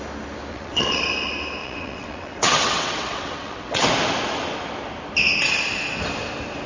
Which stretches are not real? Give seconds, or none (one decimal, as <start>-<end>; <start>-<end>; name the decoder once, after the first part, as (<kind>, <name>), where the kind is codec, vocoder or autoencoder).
0.5-1.0 (vocoder, WaveNeXt); 1.6-3.9